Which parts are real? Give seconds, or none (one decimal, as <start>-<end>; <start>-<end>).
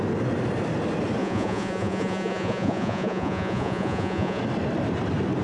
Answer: 0.0-1.2; 4.4-5.4